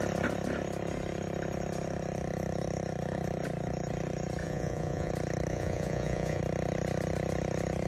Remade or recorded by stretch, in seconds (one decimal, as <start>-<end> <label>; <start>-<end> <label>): 0.0-4.4 recorded; 4.4-5.1 remade; 5.1-5.5 recorded; 5.5-6.4 remade; 6.4-7.9 recorded